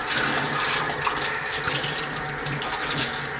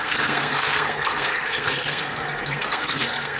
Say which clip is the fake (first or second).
second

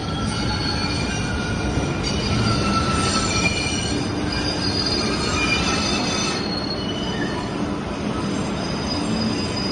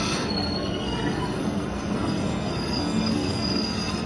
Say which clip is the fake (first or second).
second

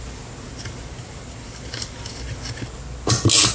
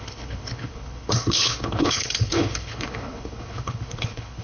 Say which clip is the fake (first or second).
second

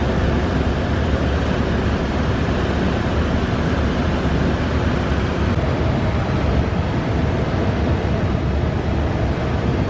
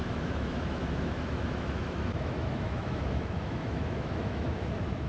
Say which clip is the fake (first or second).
second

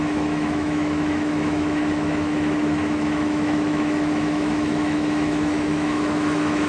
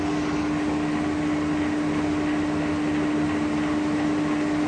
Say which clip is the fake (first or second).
first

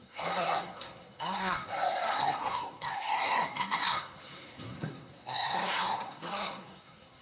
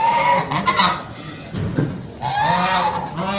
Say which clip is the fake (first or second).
first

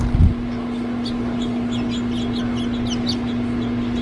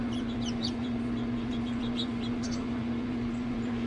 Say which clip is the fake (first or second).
second